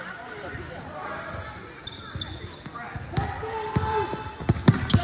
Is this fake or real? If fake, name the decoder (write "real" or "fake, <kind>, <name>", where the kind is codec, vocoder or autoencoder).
real